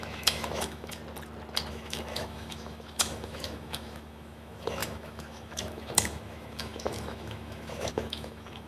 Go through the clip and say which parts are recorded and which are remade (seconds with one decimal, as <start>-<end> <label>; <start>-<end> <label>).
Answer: 0.0-1.0 remade; 1.0-1.7 recorded; 1.7-8.7 remade